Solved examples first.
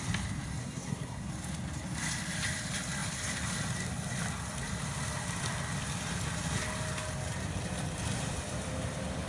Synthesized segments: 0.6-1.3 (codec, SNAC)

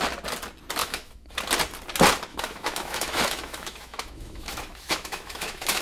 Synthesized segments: 0.8-1.4 (autoencoder, DAC-VAE); 2.3-5.8

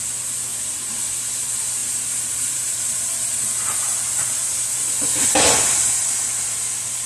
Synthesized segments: 0.5-1.3 (vocoder, BigVGAN v2); 1.8-3.4

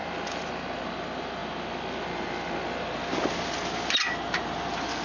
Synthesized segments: none